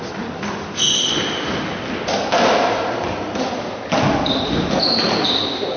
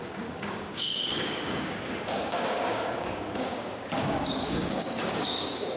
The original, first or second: first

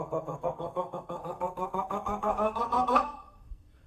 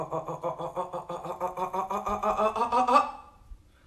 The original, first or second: second